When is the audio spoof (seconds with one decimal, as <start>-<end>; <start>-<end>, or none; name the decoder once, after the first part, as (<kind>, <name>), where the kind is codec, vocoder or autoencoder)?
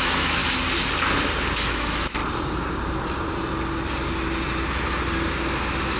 0.0-0.4 (autoencoder, DAC-VAE); 1.6-2.2